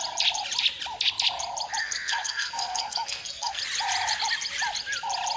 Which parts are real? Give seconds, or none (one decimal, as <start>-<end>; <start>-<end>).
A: 0.0-1.8; 3.6-5.4